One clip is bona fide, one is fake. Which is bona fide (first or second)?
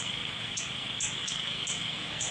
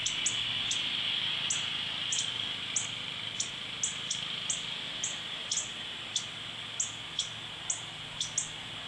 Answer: second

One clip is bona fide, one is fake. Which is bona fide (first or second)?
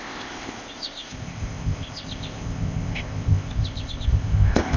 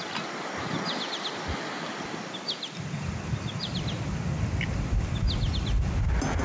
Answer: second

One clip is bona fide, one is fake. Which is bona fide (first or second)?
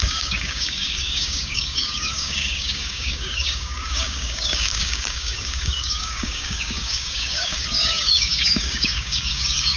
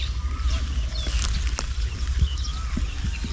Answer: second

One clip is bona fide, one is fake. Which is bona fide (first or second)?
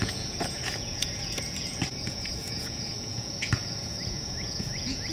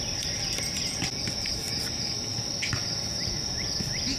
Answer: second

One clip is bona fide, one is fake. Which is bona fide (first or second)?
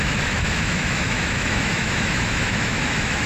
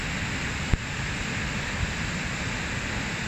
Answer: second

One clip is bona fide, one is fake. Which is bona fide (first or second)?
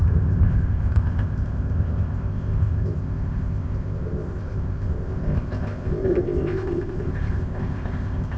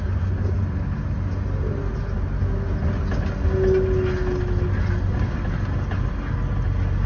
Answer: second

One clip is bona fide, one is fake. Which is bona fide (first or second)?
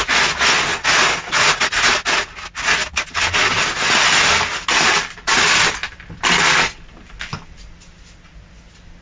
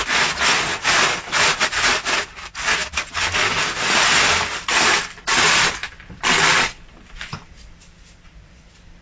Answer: first